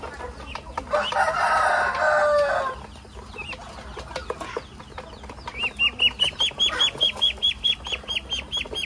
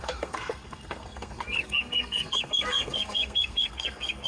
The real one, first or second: first